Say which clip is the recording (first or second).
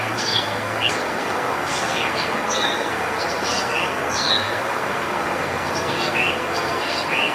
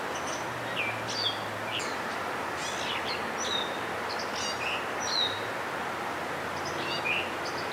second